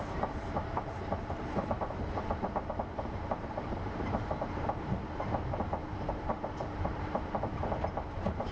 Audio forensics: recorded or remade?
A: remade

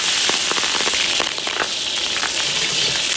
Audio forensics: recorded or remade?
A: recorded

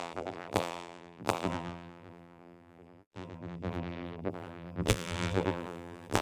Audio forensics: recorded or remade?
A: remade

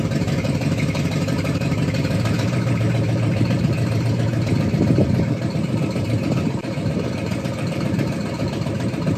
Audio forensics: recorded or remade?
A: remade